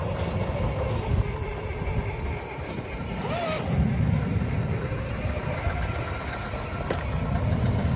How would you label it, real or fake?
real